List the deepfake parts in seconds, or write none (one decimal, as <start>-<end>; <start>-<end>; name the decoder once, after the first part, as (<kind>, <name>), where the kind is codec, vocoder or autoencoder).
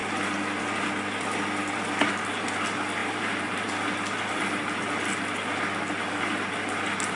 3.0-4.4 (vocoder, BigVGAN v2)